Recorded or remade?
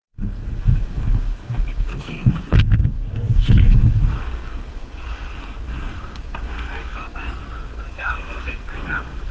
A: remade